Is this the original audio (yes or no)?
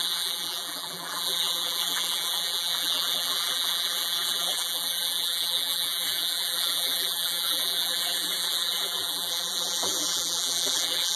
no